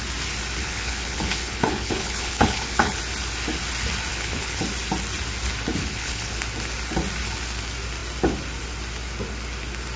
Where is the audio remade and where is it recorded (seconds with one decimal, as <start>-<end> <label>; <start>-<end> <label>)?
0.0-0.6 recorded; 0.6-3.0 remade; 3.0-4.1 recorded; 4.1-4.6 remade; 4.6-5.8 recorded; 5.8-6.4 remade; 6.4-10.0 recorded